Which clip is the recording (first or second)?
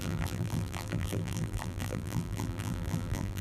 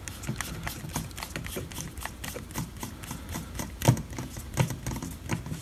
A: second